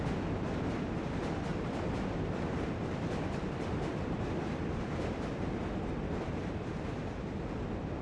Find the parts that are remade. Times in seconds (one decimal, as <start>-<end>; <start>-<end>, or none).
1.5-6.3